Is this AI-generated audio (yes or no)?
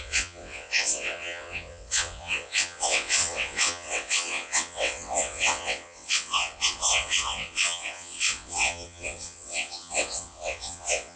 yes